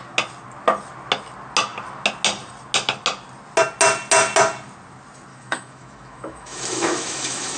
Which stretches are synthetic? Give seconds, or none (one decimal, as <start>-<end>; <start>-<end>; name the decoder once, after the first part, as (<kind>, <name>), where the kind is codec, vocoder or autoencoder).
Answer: 5.3-7.6 (autoencoder, DAC-VAE)